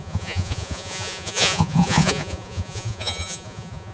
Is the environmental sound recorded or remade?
remade